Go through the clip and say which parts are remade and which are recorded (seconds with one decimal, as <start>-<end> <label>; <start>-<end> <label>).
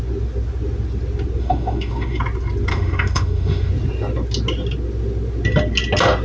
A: 0.0-1.4 recorded; 1.4-2.2 remade; 2.2-2.7 recorded; 2.7-3.7 remade; 3.7-6.2 recorded